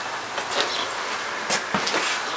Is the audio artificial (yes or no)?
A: no